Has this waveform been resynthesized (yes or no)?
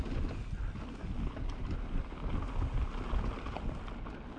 no